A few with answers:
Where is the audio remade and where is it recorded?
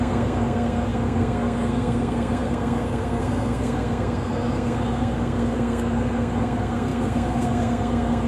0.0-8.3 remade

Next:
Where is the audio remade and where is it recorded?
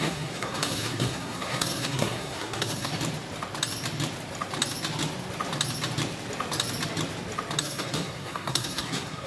0.0-2.9 remade; 2.9-7.6 recorded; 7.6-9.3 remade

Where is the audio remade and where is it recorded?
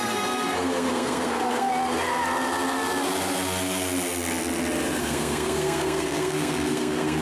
0.0-1.7 remade; 1.7-5.0 recorded; 5.0-7.2 remade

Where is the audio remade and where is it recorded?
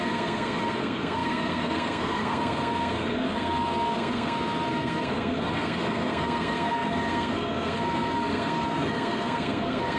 0.0-10.0 remade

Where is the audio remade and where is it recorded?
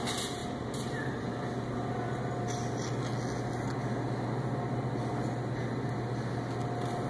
0.0-7.1 recorded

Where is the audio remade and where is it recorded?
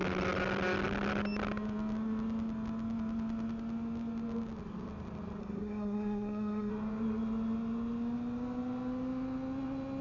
0.0-5.4 recorded; 5.4-6.7 remade; 6.7-10.0 recorded